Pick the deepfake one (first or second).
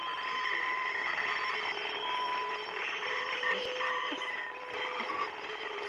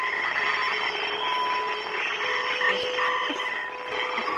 first